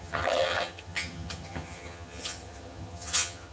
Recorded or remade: remade